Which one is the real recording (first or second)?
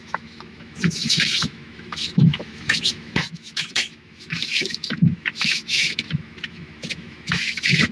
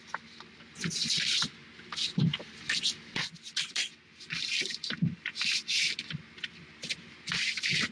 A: second